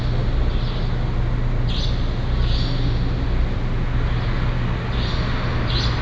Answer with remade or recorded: recorded